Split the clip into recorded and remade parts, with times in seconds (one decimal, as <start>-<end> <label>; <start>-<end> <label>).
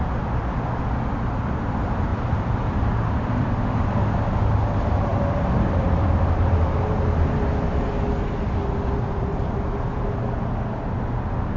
0.0-2.1 recorded; 2.1-3.9 remade; 3.9-5.1 recorded; 5.1-6.8 remade; 6.8-9.3 recorded; 9.3-10.0 remade; 10.0-11.6 recorded